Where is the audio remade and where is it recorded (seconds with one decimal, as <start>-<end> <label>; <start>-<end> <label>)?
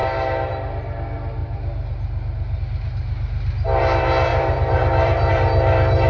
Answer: 0.0-1.4 recorded; 1.4-2.6 remade; 2.6-4.3 recorded; 4.3-5.3 remade; 5.3-6.1 recorded